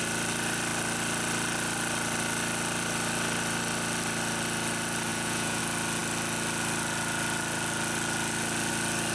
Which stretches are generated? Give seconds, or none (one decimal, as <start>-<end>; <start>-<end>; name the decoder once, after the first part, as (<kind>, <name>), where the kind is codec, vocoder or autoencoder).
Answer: 5.1-5.6 (vocoder, Vocos)